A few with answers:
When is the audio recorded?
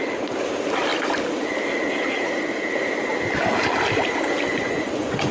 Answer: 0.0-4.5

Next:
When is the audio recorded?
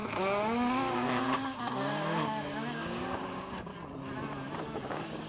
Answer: 3.7-4.6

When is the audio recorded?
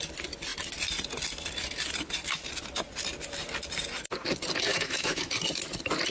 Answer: 0.0-4.7; 5.3-6.1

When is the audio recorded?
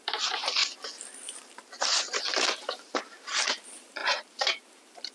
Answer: 0.6-2.2